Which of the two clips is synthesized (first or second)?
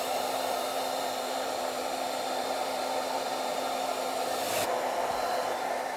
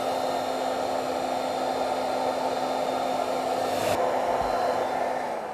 first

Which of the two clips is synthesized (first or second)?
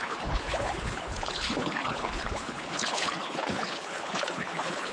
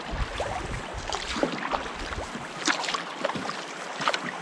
first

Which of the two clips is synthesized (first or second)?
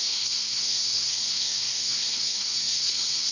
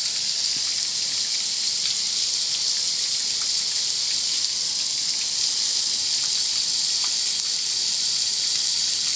first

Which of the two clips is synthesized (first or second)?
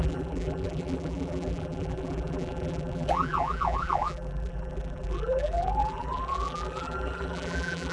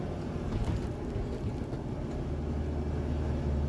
first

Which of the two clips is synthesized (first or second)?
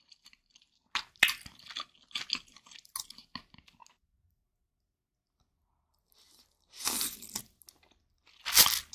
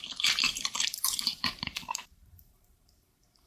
second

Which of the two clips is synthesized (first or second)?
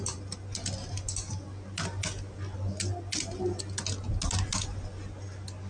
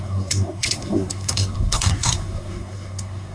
second